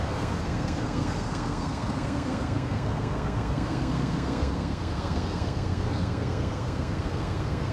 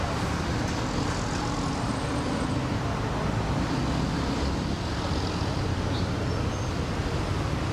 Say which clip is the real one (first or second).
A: second